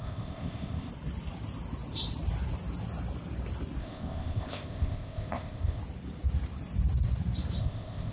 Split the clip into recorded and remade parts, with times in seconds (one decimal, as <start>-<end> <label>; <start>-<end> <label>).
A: 0.0-0.9 remade; 0.9-3.8 recorded; 3.8-5.8 remade; 5.8-7.6 recorded; 7.6-8.1 remade